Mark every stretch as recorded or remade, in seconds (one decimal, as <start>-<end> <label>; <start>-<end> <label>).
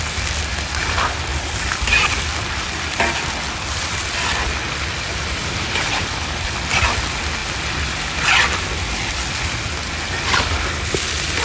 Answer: 0.0-11.4 recorded